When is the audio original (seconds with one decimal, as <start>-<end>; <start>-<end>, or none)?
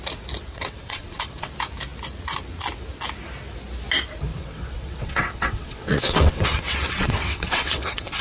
0.0-0.5; 1.5-4.3